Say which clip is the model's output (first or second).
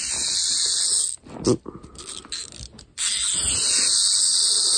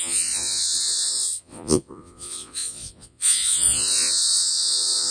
second